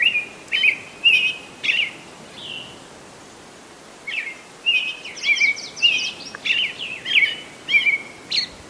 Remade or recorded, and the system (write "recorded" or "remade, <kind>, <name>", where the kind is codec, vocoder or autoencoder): recorded